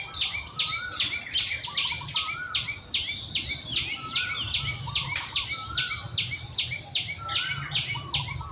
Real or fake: real